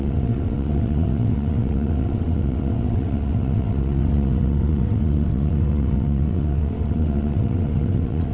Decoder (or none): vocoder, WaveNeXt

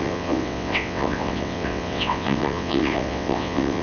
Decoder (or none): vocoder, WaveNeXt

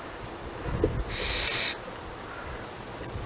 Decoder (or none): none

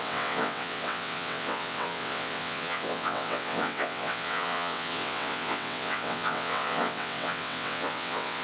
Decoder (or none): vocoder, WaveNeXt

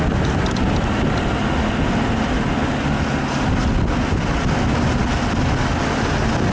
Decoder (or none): none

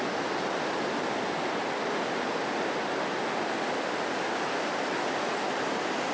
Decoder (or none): none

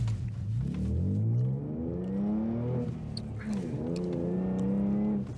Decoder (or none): none